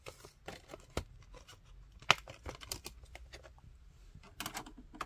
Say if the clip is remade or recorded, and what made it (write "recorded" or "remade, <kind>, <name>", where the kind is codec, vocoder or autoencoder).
recorded